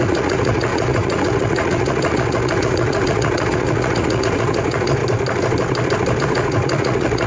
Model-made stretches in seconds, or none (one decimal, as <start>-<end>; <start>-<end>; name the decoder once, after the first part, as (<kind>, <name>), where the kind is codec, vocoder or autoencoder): 0.0-5.0 (vocoder, Vocos); 6.2-7.3